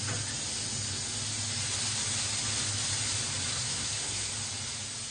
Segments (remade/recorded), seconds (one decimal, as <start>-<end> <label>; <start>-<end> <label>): 0.0-3.5 recorded; 3.5-4.3 remade; 4.3-5.1 recorded